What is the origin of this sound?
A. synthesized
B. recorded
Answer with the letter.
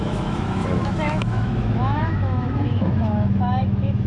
A